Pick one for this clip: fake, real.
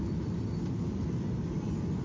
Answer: real